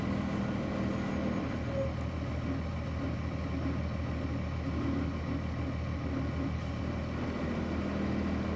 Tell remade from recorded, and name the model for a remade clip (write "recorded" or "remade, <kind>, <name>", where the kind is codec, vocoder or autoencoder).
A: recorded